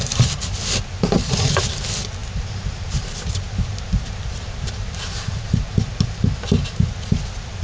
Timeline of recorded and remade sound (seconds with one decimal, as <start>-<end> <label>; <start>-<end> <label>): 0.0-2.2 recorded; 2.2-6.3 remade; 6.3-7.6 recorded